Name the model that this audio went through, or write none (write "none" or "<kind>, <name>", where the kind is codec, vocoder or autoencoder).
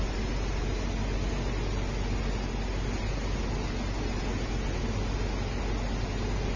none